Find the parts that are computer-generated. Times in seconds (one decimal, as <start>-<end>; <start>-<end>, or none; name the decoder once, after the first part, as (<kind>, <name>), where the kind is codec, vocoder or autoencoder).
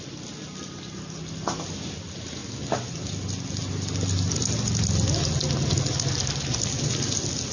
none